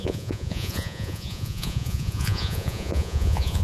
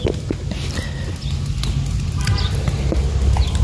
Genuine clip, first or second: second